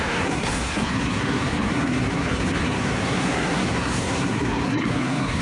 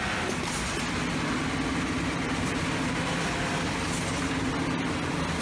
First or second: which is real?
second